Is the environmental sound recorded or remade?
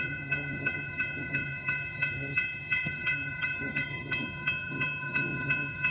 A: remade